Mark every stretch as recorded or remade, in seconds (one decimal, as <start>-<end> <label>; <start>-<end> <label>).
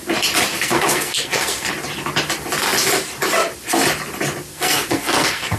0.0-0.5 recorded; 0.5-1.7 remade; 1.7-4.5 recorded; 4.5-5.6 remade